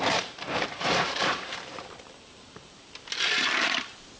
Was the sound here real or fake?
fake